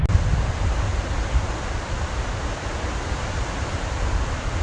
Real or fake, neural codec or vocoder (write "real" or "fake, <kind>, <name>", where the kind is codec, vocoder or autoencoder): real